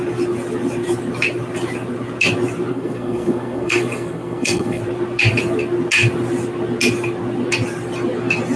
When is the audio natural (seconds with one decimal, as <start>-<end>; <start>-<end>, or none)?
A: 0.0-2.7; 4.8-8.6